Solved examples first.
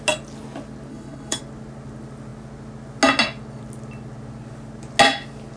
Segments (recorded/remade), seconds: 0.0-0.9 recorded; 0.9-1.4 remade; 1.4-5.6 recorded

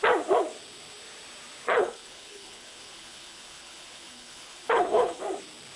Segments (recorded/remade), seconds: 0.0-1.7 recorded; 1.7-5.2 remade; 5.2-5.8 recorded